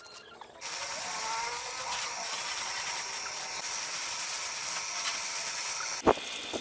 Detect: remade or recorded recorded